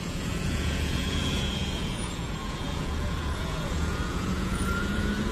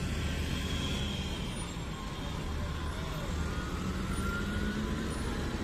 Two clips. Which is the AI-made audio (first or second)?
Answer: first